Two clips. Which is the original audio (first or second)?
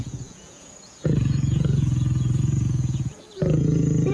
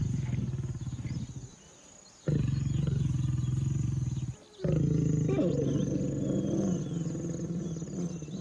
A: second